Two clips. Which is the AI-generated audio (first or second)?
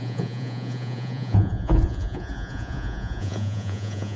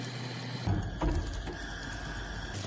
first